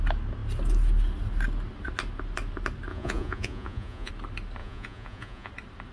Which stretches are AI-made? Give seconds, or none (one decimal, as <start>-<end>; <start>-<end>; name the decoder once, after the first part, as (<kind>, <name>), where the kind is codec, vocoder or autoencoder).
2.9-4.1 (vocoder, Vocos); 4.6-5.5